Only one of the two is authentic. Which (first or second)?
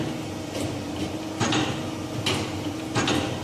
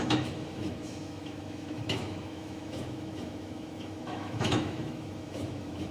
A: first